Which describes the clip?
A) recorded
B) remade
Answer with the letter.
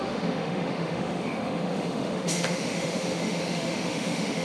B